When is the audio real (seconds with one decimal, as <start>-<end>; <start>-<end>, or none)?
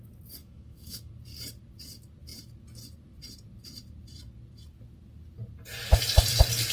0.0-0.4; 1.1-6.7